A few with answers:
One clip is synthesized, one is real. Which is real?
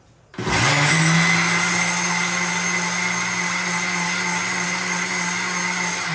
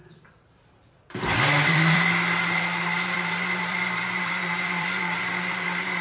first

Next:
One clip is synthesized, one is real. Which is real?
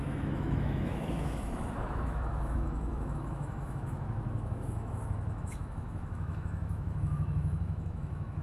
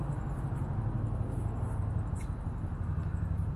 second